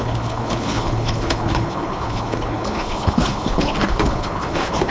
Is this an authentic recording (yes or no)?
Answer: no